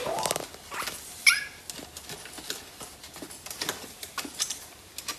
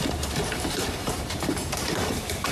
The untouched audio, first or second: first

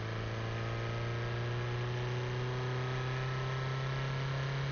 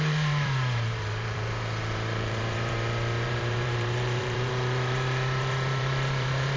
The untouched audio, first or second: first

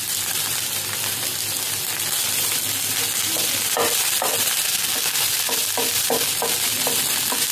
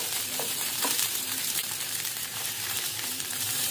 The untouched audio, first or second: first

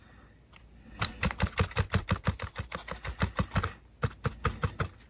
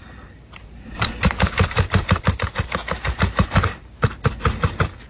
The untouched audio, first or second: first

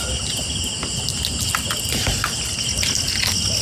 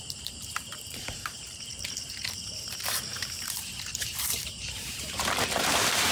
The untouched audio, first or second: first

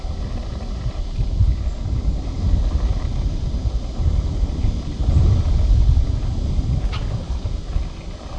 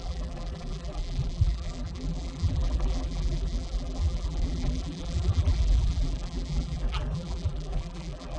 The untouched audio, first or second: first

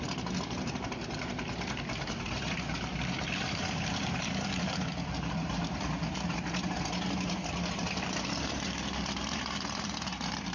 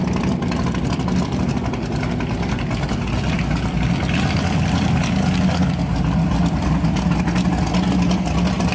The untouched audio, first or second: second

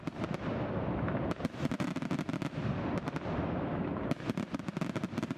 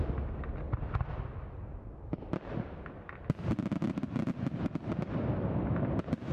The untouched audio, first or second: second